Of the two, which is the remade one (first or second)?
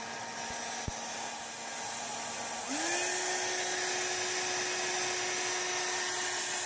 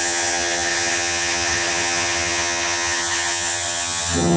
second